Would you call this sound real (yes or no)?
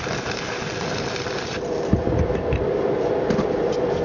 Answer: yes